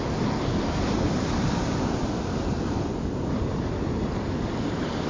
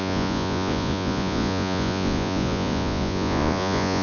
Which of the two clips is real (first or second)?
first